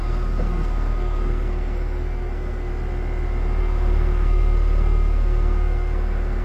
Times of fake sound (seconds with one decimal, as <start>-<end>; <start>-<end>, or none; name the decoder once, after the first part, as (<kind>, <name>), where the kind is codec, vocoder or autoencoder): 0.0-2.7 (codec, SNAC); 3.6-6.4